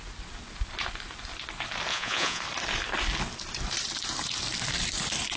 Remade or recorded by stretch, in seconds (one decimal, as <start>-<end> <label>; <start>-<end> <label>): 0.0-1.9 recorded; 1.9-2.4 remade; 2.4-5.4 recorded